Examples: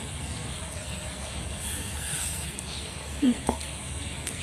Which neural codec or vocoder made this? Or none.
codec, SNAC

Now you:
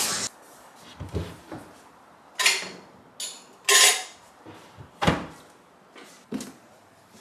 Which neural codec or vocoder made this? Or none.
none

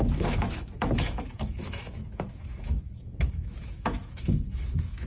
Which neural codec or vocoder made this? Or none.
autoencoder, DAC-VAE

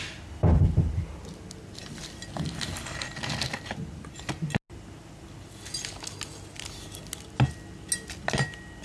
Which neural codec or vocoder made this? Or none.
none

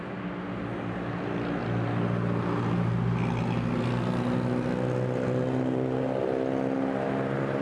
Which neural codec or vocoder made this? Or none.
none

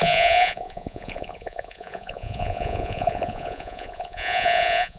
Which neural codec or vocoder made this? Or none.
vocoder, Vocos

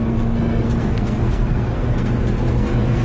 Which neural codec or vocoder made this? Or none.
codec, SNAC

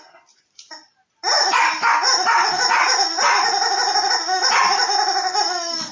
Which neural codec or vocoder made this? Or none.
none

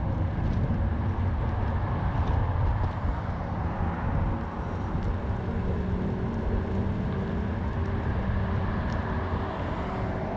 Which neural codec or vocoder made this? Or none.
none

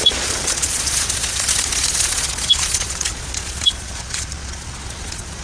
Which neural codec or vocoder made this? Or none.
vocoder, Vocos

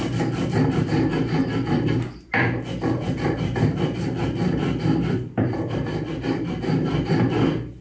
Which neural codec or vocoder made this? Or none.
none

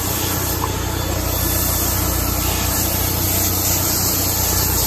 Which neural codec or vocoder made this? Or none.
none